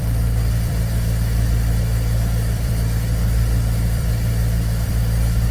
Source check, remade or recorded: remade